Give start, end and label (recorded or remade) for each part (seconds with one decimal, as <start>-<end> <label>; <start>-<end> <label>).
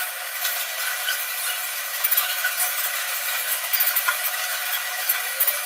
0.0-0.5 remade; 0.5-1.7 recorded; 1.7-5.7 remade